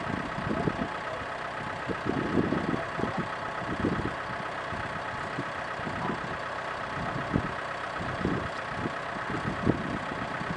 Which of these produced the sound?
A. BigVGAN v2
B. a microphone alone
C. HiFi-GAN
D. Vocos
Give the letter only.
B